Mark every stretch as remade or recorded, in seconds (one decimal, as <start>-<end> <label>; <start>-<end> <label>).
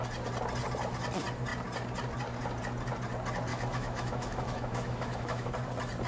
0.0-3.5 recorded; 3.5-5.5 remade; 5.5-6.1 recorded